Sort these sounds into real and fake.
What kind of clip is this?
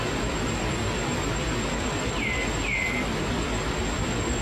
real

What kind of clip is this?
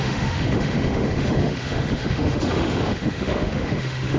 fake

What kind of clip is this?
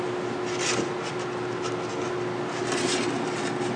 real